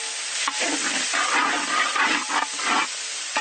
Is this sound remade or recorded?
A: recorded